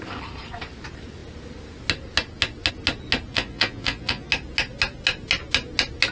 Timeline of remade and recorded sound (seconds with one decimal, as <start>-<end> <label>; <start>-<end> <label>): 0.0-3.3 recorded; 3.3-4.3 remade; 4.3-6.1 recorded